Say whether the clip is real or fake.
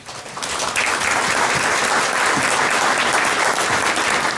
real